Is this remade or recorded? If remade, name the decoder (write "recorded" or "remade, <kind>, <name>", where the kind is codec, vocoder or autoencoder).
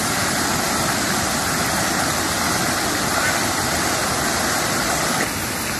recorded